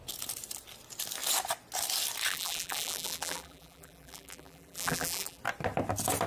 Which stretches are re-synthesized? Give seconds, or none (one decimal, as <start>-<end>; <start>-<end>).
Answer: 2.3-5.4